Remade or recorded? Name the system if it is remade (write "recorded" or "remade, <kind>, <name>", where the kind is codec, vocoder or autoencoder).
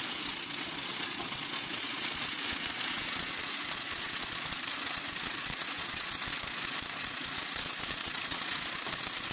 remade, vocoder, Vocos